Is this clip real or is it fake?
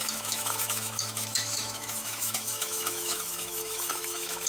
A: fake